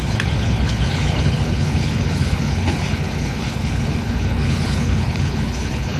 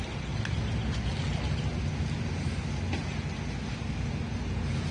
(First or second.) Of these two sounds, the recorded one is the second